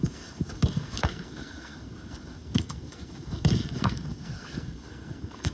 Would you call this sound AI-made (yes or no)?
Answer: yes